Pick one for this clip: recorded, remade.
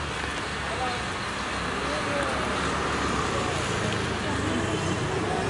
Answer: recorded